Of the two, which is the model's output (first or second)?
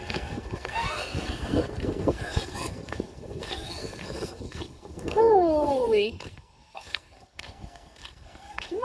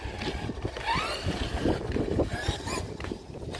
first